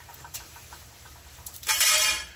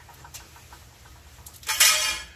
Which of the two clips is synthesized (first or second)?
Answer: first